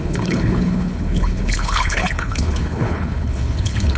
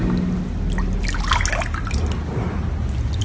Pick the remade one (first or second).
first